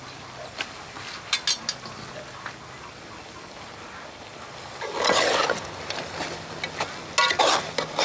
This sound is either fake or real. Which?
real